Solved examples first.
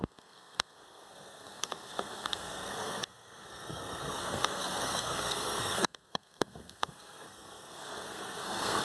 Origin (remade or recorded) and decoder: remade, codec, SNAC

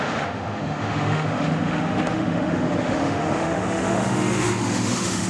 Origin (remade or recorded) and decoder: remade, autoencoder, DAC-VAE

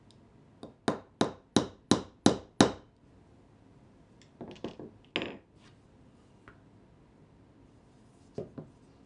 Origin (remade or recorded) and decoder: recorded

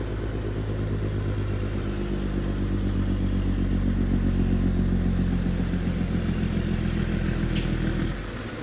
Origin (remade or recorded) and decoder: recorded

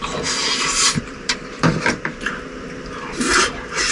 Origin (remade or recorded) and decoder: remade, vocoder, BigVGAN v2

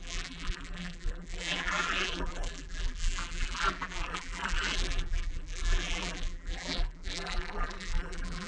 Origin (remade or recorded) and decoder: remade, vocoder, BigVGAN v2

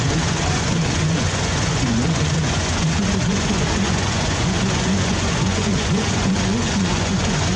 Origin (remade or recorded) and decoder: remade, vocoder, Vocos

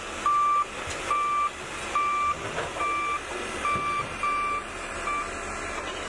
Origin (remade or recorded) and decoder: recorded